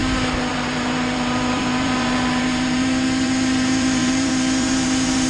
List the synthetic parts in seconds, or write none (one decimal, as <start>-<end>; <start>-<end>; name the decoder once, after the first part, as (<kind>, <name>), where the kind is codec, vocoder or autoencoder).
0.5-5.3 (vocoder, BigVGAN v2)